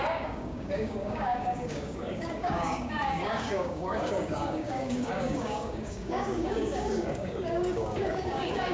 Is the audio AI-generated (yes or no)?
yes